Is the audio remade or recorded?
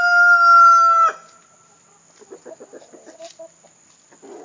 recorded